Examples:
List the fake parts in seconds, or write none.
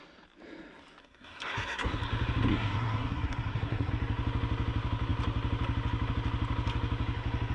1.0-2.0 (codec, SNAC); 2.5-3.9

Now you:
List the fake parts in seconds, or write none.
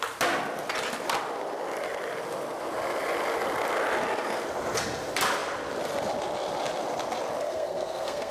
7.4-8.3 (codec, SNAC)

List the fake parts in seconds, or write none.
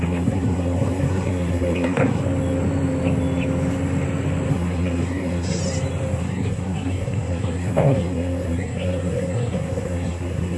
0.0-2.2 (codec, SNAC); 4.5-5.6; 6.2-10.6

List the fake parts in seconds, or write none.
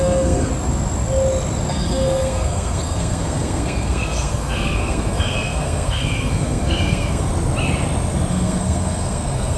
0.0-0.5 (codec, SNAC); 1.7-7.3; 8.3-9.6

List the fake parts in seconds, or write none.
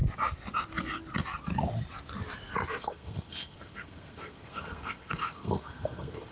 2.8-6.3 (codec, SNAC)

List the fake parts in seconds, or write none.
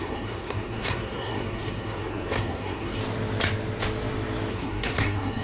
0.0-3.0 (codec, SNAC); 4.5-5.4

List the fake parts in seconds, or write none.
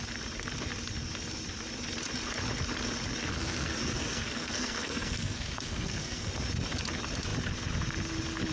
3.3-6.3 (codec, SNAC)